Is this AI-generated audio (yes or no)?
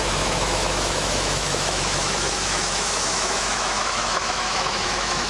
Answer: yes